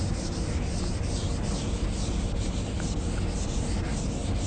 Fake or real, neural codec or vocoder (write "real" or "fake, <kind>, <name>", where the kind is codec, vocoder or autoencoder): real